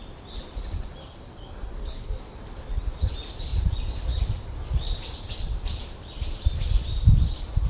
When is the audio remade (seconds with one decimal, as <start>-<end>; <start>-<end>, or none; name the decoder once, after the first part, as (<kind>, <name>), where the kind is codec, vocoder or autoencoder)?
1.0-2.2 (codec, SNAC)